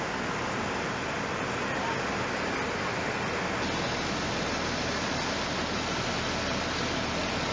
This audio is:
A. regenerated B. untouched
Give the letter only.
B